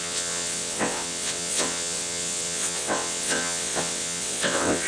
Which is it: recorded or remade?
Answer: remade